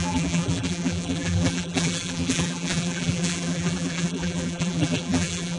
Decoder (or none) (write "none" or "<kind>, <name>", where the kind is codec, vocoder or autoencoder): vocoder, BigVGAN v2